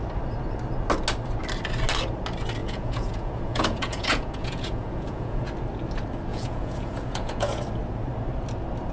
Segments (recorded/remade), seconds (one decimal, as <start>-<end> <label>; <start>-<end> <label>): 0.0-2.6 recorded; 2.6-5.5 remade; 5.5-6.3 recorded; 6.3-7.6 remade; 7.6-8.9 recorded